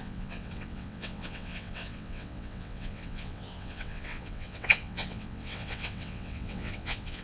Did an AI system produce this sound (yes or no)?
yes